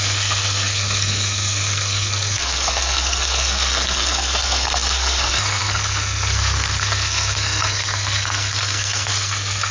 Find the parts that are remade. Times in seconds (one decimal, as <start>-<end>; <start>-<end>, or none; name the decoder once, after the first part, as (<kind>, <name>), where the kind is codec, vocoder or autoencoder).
0.0-9.7 (codec, SNAC)